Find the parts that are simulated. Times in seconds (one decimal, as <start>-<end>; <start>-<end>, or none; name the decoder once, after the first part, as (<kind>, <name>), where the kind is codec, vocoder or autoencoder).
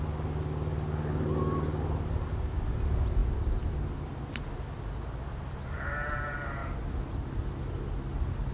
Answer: 3.2-5.4 (vocoder, BigVGAN v2)